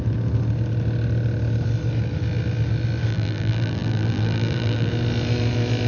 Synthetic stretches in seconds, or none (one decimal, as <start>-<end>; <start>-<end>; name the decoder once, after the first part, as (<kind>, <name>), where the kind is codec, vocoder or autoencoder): 3.1-4.9 (vocoder, BigVGAN v2)